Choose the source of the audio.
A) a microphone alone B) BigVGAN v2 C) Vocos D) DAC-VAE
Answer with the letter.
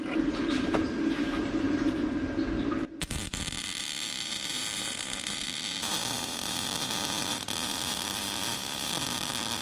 B